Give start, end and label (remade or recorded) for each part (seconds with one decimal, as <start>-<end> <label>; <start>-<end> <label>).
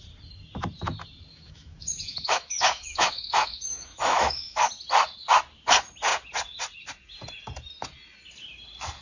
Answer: 0.0-1.3 recorded; 1.3-4.7 remade; 4.7-9.0 recorded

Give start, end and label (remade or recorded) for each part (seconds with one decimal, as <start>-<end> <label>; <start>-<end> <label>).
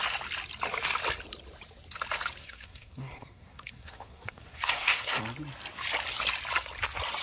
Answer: 0.0-2.4 recorded; 2.4-5.2 remade; 5.2-7.2 recorded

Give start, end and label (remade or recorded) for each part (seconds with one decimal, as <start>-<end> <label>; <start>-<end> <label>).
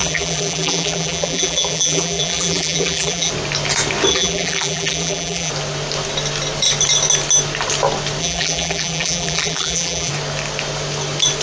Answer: 0.0-3.3 remade; 3.3-4.1 recorded; 4.1-5.5 remade; 5.5-8.2 recorded; 8.2-10.1 remade; 10.1-11.4 recorded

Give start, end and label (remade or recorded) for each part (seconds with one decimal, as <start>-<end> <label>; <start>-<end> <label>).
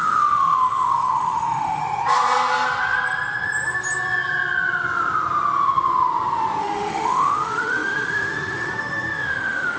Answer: 0.0-1.8 remade; 1.8-6.6 recorded; 6.6-9.8 remade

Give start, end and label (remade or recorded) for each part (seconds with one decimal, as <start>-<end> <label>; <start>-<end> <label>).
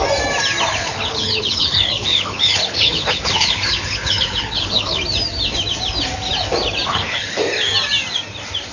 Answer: 0.0-0.7 recorded; 0.7-5.0 remade; 5.0-6.9 recorded; 6.9-7.4 remade; 7.4-8.7 recorded